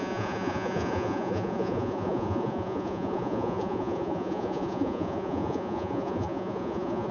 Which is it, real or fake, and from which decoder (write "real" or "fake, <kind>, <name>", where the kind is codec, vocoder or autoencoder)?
fake, vocoder, Vocos